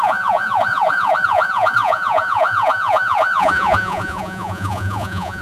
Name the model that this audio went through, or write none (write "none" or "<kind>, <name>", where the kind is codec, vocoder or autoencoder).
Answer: vocoder, Vocos